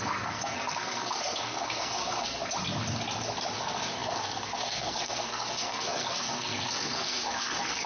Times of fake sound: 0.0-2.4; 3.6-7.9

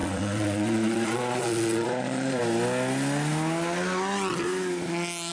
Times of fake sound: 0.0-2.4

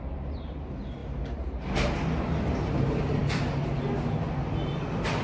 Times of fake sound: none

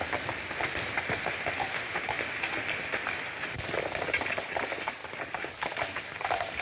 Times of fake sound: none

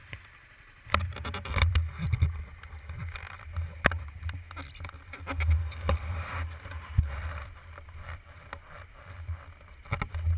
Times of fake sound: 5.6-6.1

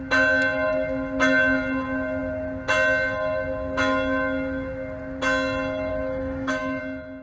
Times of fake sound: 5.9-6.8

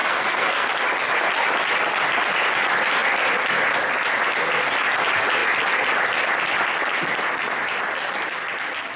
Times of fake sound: 0.0-0.7

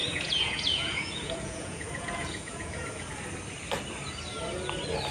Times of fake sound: 0.0-3.1